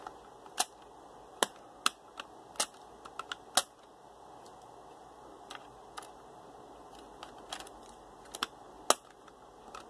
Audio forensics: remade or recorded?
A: recorded